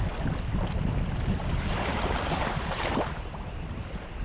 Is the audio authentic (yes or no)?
yes